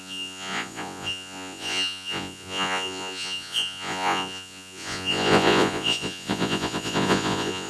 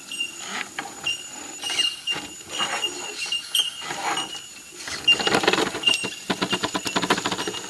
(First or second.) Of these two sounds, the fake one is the first